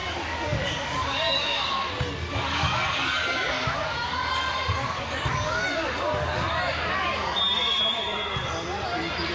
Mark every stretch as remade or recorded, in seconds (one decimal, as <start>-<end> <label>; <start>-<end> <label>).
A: 0.0-1.9 remade; 1.9-2.3 recorded; 2.3-7.4 remade; 7.4-9.3 recorded